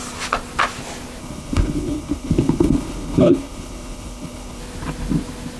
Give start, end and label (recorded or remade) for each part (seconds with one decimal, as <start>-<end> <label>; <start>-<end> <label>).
0.0-1.2 recorded; 1.2-4.6 remade; 4.6-5.6 recorded